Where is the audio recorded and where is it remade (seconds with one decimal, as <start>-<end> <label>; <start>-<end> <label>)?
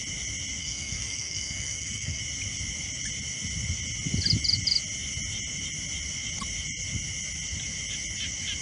0.0-0.6 recorded; 0.6-2.2 remade; 2.2-8.6 recorded